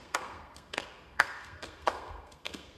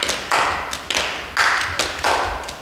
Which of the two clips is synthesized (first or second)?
first